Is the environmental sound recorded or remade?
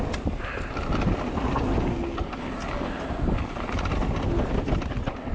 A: recorded